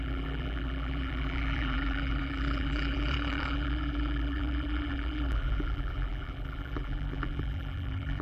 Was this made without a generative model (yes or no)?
no